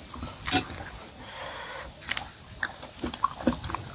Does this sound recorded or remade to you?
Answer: recorded